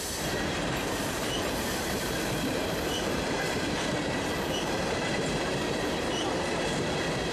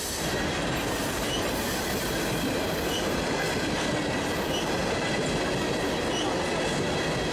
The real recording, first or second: second